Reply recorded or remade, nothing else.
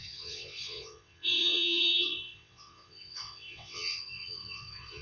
remade